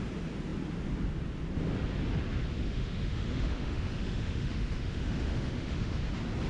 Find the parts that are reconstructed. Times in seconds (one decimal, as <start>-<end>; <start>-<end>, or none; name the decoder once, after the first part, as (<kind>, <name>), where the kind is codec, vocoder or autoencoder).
2.6-6.0 (autoencoder, DAC-VAE)